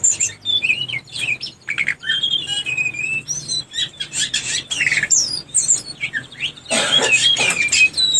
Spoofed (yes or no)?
yes